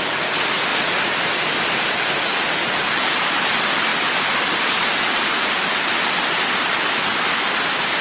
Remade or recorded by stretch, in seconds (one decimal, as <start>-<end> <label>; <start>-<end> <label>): 0.0-8.0 recorded